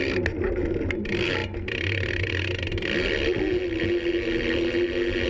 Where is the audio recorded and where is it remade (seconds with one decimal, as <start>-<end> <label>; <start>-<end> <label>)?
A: 0.0-5.3 recorded